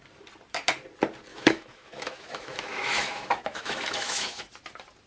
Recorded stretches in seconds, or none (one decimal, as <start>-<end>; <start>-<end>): 0.0-1.3; 4.4-5.1